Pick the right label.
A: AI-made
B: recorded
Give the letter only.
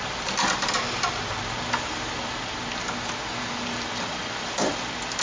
B